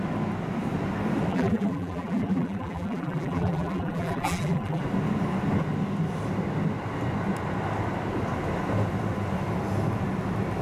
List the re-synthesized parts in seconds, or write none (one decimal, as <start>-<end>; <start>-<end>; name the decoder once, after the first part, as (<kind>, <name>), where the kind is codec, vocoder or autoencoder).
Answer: 1.3-4.8 (vocoder, BigVGAN v2)